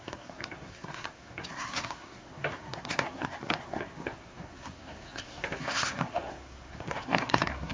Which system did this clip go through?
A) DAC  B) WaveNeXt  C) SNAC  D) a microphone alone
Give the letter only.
C